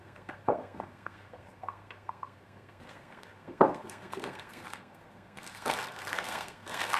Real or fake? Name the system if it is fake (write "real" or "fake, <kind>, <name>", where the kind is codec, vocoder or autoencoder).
fake, codec, SNAC